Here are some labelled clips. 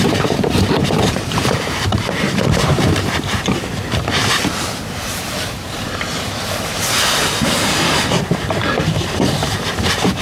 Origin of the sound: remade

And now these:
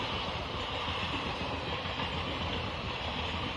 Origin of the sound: recorded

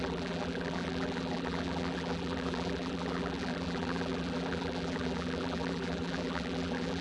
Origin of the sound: remade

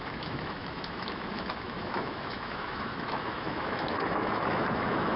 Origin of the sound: remade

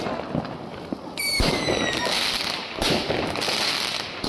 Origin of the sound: recorded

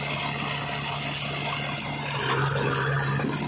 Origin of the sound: recorded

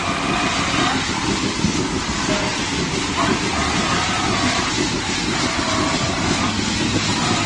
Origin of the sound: recorded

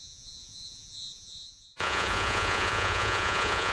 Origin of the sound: remade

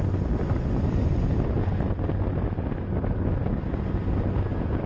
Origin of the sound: recorded